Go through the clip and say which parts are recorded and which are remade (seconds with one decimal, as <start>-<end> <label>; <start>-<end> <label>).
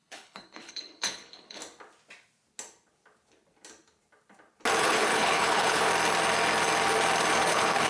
0.0-1.6 remade; 1.6-4.8 recorded; 4.8-5.9 remade; 5.9-7.4 recorded; 7.4-7.9 remade